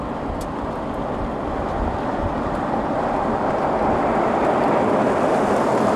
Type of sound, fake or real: real